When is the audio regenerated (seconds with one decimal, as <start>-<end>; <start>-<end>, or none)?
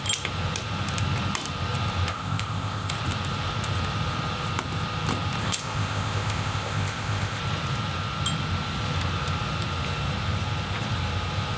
2.1-2.9; 5.4-7.4